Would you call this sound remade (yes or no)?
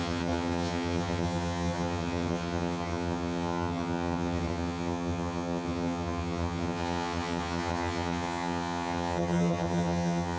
yes